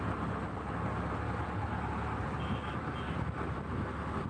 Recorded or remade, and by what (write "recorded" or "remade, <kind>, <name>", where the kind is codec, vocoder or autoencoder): recorded